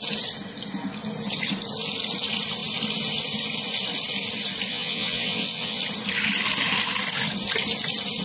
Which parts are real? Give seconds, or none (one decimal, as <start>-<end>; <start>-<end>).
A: 0.0-4.7; 5.8-8.2